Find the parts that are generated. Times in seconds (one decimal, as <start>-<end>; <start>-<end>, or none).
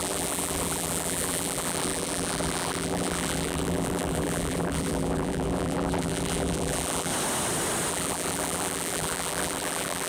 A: 0.0-7.1; 7.9-10.1